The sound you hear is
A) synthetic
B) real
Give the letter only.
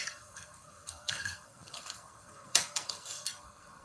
A